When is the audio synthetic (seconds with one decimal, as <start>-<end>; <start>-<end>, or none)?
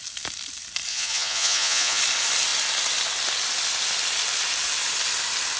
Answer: 0.9-2.0